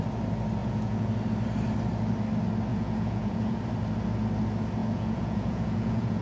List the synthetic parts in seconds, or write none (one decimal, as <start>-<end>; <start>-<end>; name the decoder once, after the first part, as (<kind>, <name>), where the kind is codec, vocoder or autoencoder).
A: 0.6-1.1 (vocoder, Vocos); 2.7-3.6; 4.8-6.2